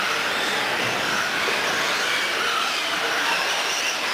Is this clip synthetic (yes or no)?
no